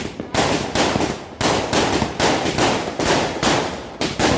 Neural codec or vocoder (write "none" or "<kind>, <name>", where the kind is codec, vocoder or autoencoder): none